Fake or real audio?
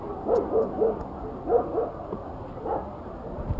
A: real